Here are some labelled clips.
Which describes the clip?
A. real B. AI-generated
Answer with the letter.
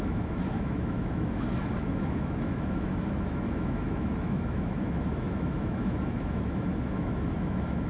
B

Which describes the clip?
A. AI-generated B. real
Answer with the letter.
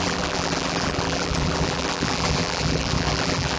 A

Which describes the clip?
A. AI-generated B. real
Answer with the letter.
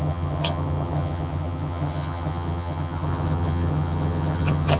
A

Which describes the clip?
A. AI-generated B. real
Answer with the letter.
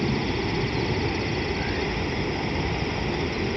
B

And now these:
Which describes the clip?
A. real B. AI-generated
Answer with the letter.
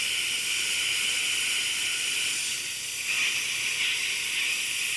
A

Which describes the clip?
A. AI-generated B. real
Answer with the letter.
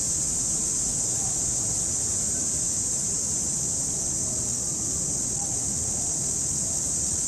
B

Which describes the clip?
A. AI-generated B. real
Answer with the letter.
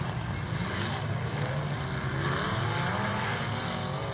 B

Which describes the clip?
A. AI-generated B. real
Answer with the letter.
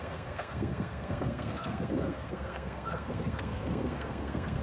A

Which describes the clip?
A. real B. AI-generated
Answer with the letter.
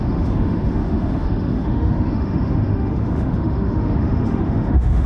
B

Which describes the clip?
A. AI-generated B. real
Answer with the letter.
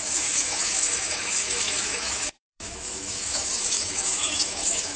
A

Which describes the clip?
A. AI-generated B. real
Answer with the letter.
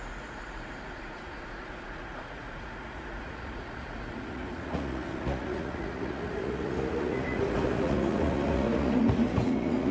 A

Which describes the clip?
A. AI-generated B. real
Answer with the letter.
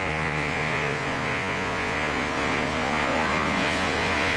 A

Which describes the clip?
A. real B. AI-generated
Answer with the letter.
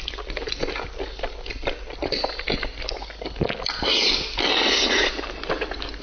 A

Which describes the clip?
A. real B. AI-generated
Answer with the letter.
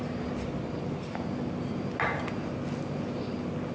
A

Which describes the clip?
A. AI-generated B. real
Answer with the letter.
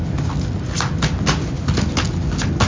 B